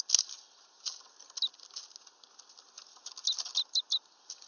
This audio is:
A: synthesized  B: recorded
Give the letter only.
B